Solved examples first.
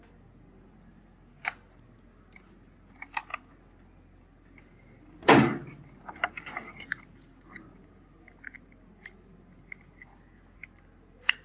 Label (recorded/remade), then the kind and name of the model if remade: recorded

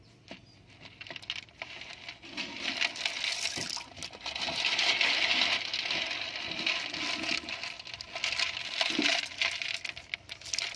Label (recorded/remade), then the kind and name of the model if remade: recorded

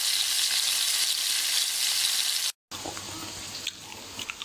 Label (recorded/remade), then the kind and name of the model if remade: recorded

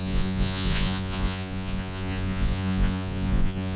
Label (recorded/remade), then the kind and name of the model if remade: remade, vocoder, Vocos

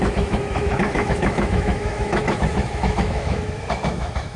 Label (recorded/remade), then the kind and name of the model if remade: remade, autoencoder, DAC-VAE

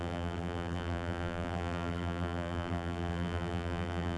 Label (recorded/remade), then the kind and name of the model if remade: remade, vocoder, BigVGAN v2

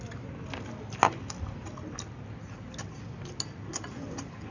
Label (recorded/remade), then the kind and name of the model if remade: recorded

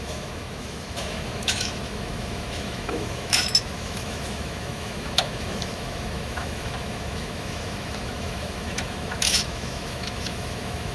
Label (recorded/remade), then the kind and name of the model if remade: remade, autoencoder, DAC-VAE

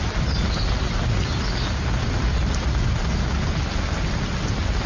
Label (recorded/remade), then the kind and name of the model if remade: recorded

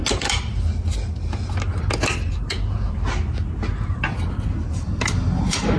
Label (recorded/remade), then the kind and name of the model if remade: recorded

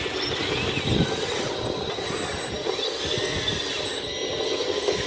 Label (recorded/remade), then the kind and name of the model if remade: recorded